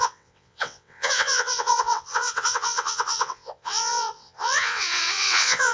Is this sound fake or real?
fake